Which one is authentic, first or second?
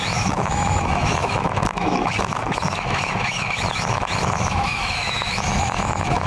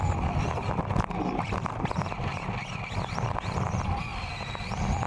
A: second